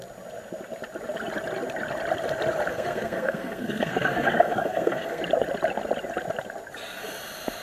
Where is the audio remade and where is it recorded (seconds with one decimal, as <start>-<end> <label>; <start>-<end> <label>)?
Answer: 0.0-2.7 recorded; 2.7-5.2 remade; 5.2-7.6 recorded